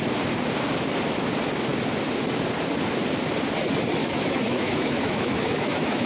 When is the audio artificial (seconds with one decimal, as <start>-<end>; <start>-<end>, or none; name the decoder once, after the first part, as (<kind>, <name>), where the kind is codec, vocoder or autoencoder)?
4.0-6.1 (autoencoder, DAC-VAE)